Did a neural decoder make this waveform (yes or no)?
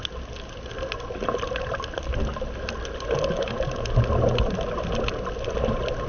no